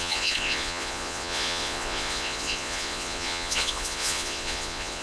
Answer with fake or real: fake